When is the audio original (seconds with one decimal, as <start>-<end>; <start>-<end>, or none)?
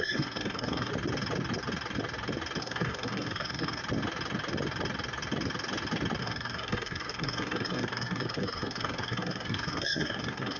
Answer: 0.9-2.6; 3.8-6.2